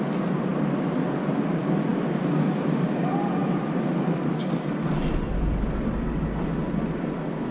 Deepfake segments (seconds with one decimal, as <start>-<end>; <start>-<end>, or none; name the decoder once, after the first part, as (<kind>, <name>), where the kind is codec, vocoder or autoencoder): none